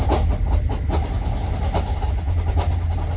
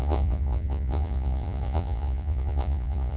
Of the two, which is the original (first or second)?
first